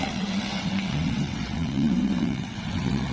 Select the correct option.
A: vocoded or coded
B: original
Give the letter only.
A